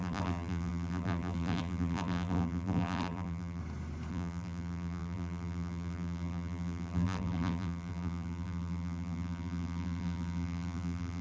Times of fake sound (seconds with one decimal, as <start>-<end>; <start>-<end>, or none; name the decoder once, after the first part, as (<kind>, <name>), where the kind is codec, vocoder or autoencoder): 0.0-3.6 (vocoder, BigVGAN v2); 4.1-11.2